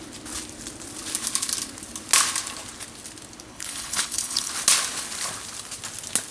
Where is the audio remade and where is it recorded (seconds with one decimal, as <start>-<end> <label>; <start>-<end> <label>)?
0.0-3.5 recorded; 3.5-4.5 remade; 4.5-6.3 recorded

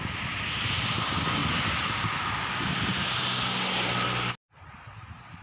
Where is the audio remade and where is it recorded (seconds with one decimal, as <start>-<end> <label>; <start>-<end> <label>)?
0.0-5.4 recorded